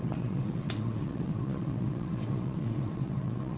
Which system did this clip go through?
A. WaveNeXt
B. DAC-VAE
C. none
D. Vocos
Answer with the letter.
A